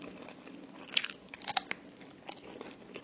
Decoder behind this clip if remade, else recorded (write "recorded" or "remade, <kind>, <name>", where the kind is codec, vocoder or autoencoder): recorded